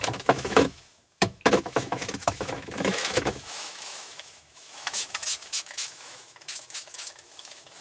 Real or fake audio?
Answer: fake